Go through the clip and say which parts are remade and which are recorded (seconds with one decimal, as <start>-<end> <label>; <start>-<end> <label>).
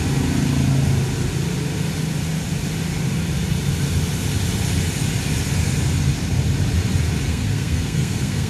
0.0-7.3 recorded; 7.3-8.5 remade